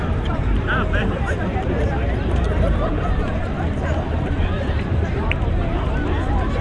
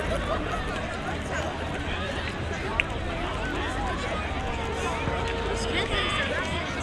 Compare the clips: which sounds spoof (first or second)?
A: first